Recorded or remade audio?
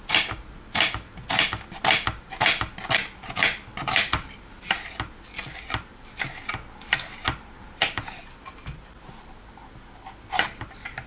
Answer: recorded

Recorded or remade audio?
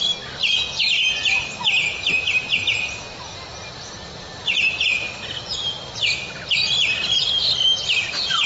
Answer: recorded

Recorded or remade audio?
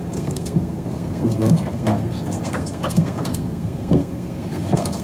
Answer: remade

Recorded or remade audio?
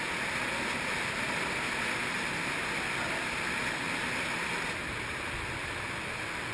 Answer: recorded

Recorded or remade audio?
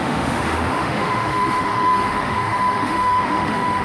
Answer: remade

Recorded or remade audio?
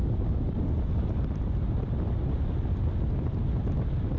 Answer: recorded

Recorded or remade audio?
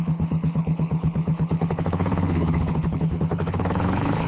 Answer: remade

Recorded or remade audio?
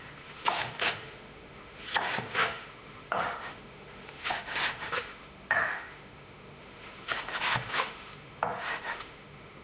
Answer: remade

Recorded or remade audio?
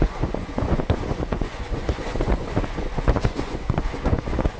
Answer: remade